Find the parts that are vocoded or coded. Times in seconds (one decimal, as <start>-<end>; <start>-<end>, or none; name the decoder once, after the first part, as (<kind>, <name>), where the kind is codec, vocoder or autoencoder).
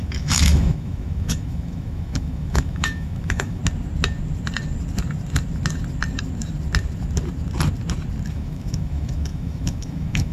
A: 0.0-3.6 (autoencoder, DAC-VAE); 8.3-10.3